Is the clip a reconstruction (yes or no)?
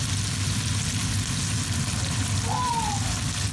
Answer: no